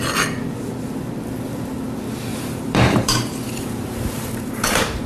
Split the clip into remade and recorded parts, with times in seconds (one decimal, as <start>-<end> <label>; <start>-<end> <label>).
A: 0.0-2.3 recorded; 2.3-5.1 remade